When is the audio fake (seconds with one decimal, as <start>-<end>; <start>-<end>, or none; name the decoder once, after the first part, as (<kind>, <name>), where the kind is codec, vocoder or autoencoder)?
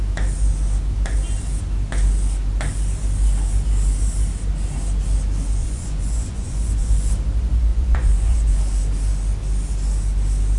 5.6-7.1 (vocoder, Vocos); 7.7-8.6